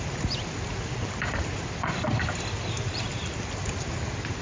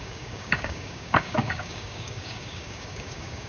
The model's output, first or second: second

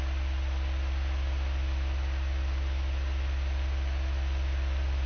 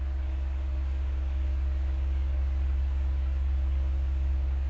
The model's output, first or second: second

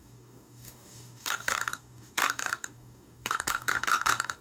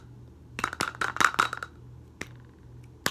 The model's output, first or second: first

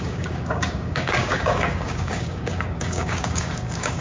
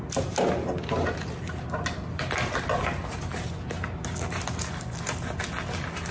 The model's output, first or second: first